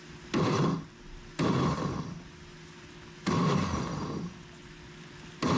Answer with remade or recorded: recorded